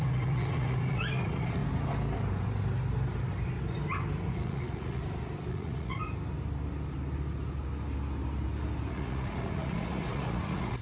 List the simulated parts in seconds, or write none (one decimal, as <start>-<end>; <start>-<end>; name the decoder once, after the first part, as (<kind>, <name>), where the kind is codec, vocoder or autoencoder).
0.0-1.6 (vocoder, Vocos); 4.3-5.0; 5.5-6.0; 8.9-10.8